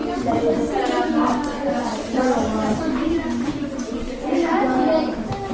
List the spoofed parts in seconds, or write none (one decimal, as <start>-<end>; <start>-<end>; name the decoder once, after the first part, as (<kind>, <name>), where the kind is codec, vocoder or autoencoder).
0.0-0.8 (vocoder, BigVGAN v2); 1.9-5.5